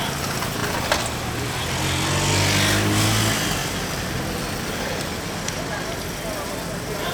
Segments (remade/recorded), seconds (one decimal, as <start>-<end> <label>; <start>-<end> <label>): 0.0-3.6 recorded; 3.6-5.6 remade; 5.6-7.1 recorded

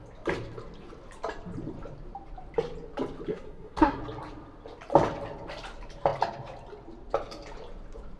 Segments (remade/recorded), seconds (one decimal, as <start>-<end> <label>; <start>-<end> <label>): 0.0-3.3 recorded; 3.3-4.0 remade; 4.0-8.2 recorded

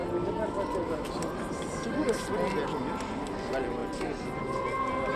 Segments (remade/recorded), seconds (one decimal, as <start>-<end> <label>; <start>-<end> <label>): 0.0-5.2 recorded

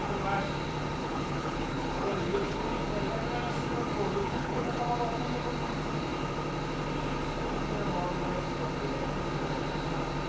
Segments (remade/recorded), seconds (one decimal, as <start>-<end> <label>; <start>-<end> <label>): 0.0-1.0 recorded; 1.0-2.6 remade; 2.6-4.2 recorded; 4.2-4.8 remade; 4.8-10.3 recorded

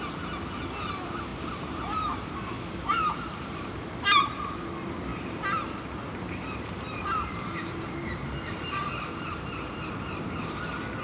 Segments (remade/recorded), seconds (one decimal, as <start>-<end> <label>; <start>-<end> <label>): 0.0-1.3 recorded; 1.3-3.7 remade; 3.7-5.1 recorded; 5.1-10.3 remade; 10.3-11.0 recorded

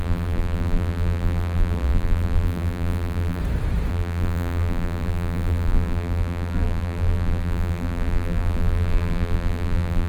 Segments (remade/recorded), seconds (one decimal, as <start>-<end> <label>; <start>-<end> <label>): 0.0-3.4 remade; 3.4-3.9 recorded; 3.9-10.1 remade

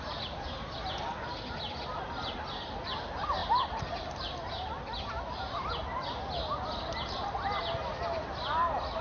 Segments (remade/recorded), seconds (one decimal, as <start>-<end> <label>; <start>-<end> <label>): 0.0-9.0 recorded